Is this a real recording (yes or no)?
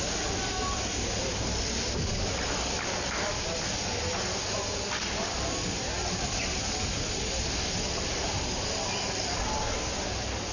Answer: yes